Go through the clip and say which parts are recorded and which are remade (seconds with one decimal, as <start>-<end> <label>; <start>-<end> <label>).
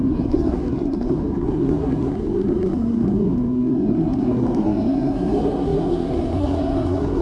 0.0-7.2 remade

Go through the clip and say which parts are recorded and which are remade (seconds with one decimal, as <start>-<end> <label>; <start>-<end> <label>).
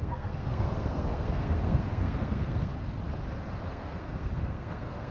0.0-2.7 remade; 2.7-3.7 recorded; 3.7-5.1 remade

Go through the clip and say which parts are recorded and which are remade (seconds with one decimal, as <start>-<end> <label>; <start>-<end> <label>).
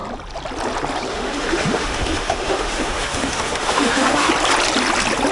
0.0-1.1 recorded; 1.1-4.3 remade; 4.3-5.3 recorded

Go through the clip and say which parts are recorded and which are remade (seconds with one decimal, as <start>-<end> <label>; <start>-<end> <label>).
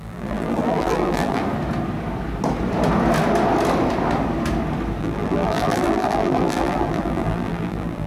0.0-1.4 remade; 1.4-5.0 recorded; 5.0-8.1 remade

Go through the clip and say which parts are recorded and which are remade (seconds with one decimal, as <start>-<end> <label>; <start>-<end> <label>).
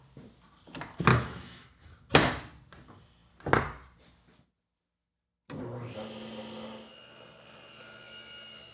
0.0-1.1 recorded; 1.1-2.1 remade; 2.1-8.7 recorded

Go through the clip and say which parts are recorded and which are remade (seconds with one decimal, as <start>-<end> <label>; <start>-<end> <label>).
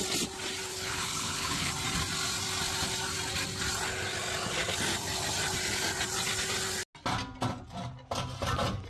0.0-0.7 recorded; 0.7-1.7 remade; 1.7-8.9 recorded